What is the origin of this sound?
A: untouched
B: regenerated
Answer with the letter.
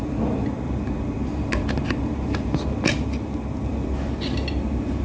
A